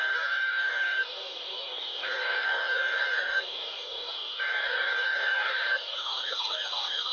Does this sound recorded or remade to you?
remade